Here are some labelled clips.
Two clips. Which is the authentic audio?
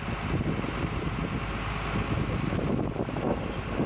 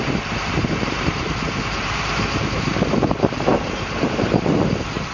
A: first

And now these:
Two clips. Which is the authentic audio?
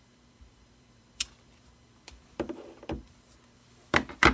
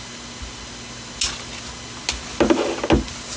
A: second